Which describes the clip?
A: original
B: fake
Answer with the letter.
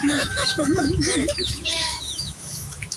B